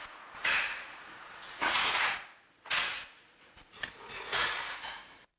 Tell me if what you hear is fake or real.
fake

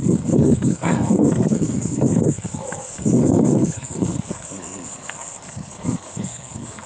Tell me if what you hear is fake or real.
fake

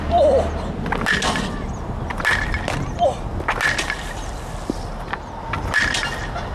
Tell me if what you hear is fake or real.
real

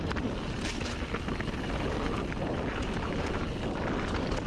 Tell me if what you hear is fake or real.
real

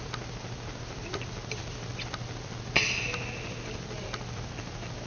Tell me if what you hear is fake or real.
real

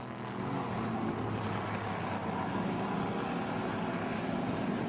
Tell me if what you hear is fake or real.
real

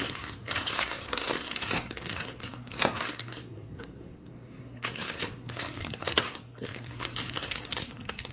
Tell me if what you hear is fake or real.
fake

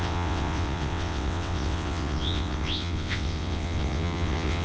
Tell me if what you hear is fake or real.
fake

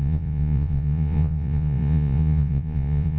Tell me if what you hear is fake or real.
fake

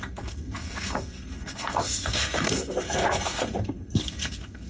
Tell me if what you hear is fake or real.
fake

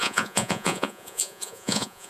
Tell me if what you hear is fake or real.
fake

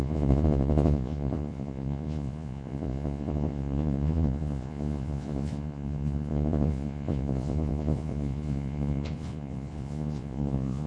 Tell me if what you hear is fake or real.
fake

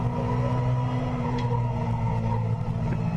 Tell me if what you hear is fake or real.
real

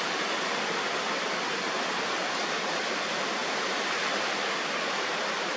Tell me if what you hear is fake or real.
real